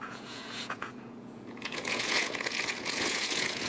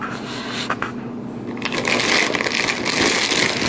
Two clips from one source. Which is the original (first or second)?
second